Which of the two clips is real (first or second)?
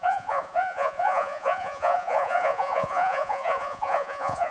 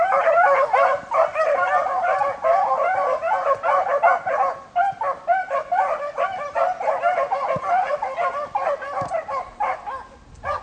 second